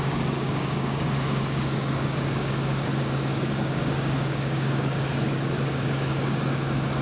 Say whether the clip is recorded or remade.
remade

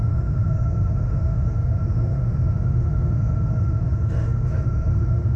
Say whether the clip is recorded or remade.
remade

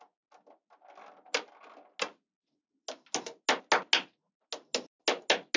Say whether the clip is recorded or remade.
recorded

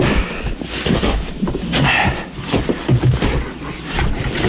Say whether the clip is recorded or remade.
recorded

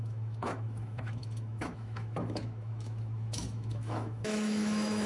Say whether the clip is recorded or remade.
remade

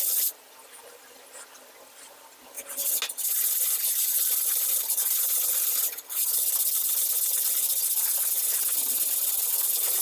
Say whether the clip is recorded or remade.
recorded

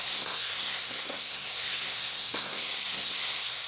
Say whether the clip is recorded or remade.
remade